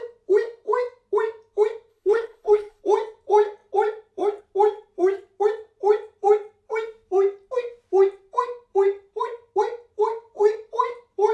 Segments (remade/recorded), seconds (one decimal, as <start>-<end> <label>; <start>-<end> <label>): 0.0-1.9 recorded; 1.9-2.8 remade; 2.8-11.3 recorded